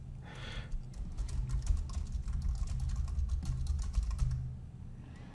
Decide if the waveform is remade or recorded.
recorded